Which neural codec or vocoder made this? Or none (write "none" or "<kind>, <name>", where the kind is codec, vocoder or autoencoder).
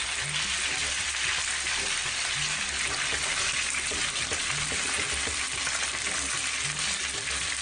none